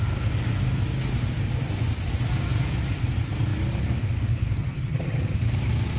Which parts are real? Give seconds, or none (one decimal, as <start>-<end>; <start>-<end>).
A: 0.0-4.6; 5.2-6.0